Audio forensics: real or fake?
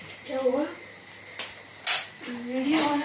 real